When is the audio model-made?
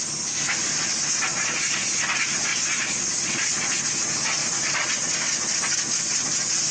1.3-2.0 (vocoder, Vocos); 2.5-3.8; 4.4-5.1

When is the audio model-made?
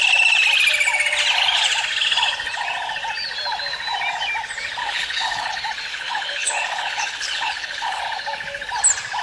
4.8-5.5 (codec, HILCodec); 5.9-8.0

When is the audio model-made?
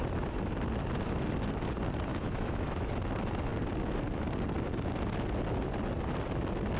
2.1-2.9 (autoencoder, DAC-VAE)